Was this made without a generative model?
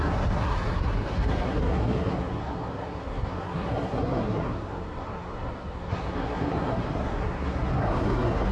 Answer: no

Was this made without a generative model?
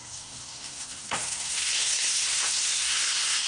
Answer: no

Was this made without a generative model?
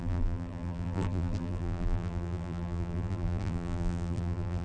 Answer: no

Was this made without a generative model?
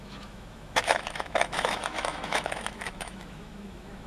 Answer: no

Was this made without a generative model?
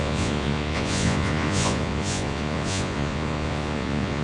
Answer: no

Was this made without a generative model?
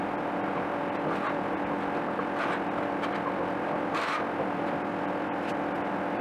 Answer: yes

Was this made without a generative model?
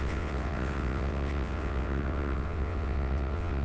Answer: no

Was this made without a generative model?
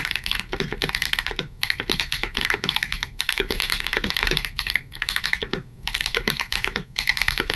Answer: no